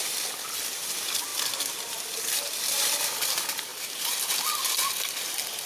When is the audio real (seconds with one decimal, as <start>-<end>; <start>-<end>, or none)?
0.0-5.7